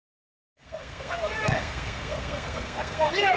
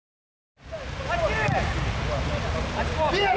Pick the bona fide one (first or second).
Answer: second